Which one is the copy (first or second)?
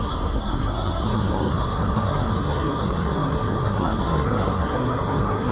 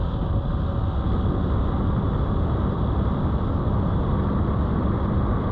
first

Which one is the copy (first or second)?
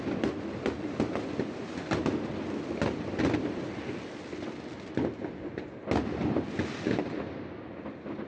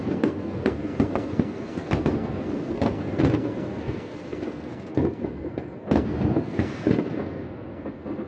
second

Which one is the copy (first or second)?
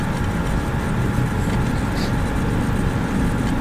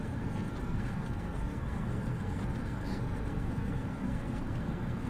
second